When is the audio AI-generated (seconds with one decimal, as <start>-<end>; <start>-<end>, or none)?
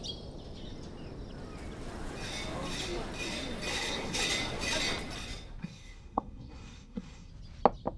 3.7-4.2; 5.6-7.3